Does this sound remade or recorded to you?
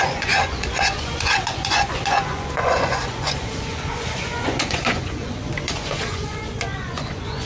remade